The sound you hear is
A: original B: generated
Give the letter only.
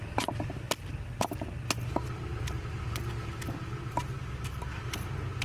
A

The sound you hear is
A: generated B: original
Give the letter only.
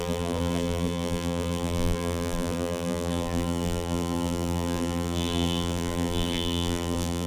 A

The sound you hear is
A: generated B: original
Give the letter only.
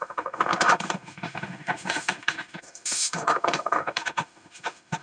A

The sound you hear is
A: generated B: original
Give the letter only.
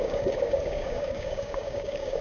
A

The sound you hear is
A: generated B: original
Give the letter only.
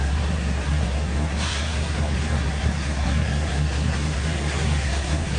A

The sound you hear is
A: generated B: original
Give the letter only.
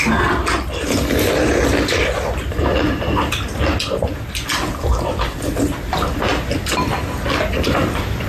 B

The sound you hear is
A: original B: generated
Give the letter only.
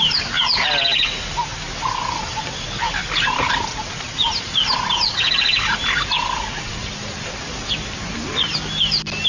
A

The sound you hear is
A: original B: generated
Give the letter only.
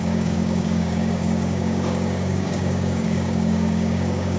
B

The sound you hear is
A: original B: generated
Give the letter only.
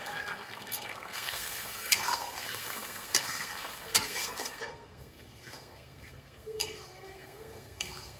B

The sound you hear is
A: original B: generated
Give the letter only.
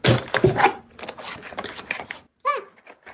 A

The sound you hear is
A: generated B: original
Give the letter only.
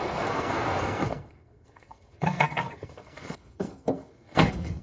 A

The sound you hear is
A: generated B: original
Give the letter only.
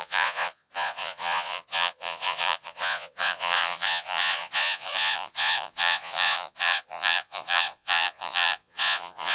A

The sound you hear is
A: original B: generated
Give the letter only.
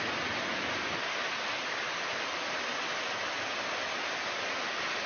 A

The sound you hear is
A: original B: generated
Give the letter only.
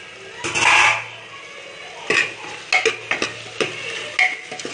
A